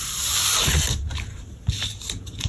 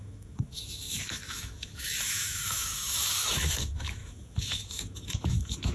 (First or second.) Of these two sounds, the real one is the first